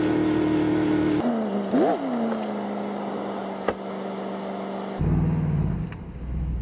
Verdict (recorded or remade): recorded